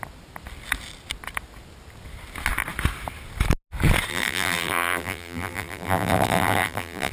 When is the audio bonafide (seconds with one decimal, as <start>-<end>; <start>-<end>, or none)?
0.0-4.1